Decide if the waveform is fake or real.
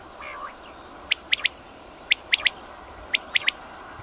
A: real